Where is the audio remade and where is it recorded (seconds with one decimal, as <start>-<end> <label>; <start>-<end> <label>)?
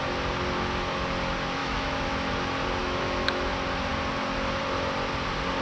0.0-1.6 recorded; 1.6-2.3 remade; 2.3-2.8 recorded; 2.8-3.5 remade; 3.5-5.6 recorded